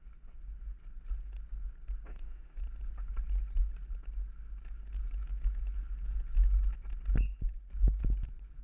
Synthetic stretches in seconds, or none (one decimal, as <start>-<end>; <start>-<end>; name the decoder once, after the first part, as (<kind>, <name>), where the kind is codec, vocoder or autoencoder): 2.1-2.6 (autoencoder, DAC-VAE)